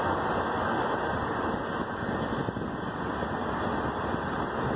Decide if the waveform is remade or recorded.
recorded